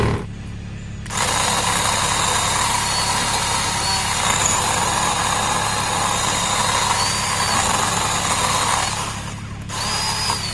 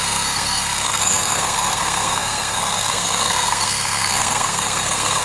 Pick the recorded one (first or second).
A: first